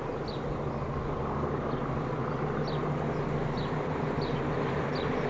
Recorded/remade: recorded